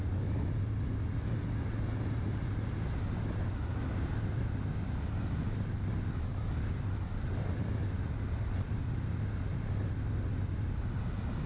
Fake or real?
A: real